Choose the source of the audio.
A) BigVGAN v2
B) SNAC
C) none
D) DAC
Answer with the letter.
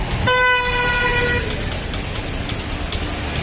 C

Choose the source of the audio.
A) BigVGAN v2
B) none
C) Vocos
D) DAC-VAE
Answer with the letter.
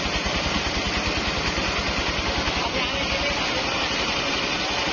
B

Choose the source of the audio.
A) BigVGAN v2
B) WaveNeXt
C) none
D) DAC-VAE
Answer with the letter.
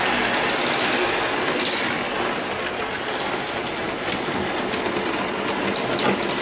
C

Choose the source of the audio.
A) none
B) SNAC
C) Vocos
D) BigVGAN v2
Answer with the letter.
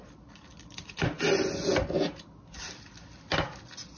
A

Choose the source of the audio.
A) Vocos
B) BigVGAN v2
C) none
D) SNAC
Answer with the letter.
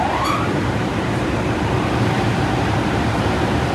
B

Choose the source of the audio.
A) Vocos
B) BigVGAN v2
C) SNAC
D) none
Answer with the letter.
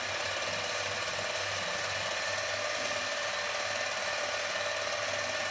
D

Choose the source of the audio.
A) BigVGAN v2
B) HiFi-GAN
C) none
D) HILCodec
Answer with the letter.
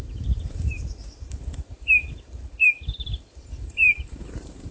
A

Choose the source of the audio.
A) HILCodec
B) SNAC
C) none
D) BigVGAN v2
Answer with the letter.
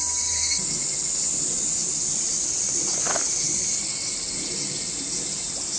C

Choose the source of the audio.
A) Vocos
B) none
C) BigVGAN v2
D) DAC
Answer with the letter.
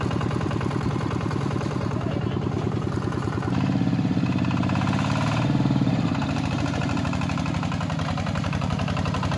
C